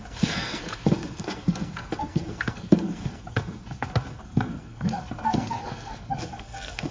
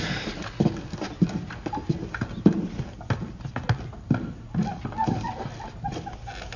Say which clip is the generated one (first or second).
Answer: first